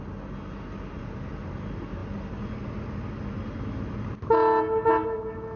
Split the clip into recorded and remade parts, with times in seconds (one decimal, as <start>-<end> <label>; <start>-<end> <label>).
0.0-5.6 recorded